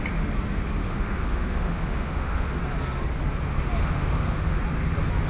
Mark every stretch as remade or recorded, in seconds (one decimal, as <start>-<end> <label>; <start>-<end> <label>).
0.0-0.8 recorded; 0.8-2.6 remade; 2.6-3.8 recorded; 3.8-4.6 remade; 4.6-5.3 recorded

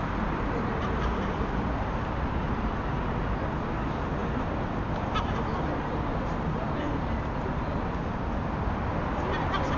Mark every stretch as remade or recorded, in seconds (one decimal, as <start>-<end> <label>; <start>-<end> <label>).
0.0-9.8 recorded

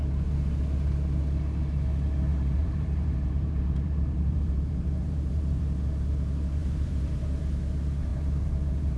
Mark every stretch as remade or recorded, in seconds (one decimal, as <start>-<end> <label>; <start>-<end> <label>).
0.0-2.3 recorded; 2.3-5.6 remade; 5.6-6.6 recorded; 6.6-7.4 remade; 7.4-8.1 recorded; 8.1-9.0 remade

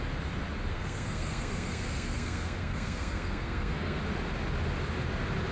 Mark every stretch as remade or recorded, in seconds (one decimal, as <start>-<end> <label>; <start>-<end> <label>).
0.0-0.7 recorded; 0.7-4.0 remade; 4.0-5.5 recorded